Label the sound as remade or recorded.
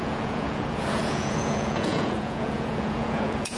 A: remade